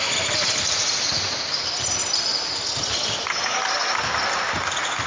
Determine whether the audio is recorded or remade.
recorded